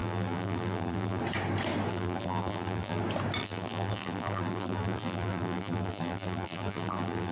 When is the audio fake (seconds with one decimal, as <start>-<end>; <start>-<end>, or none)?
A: 0.0-1.2; 1.9-3.0; 3.4-7.3